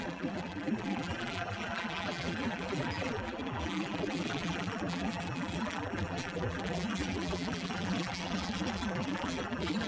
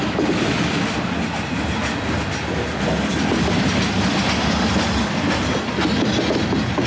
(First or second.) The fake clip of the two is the first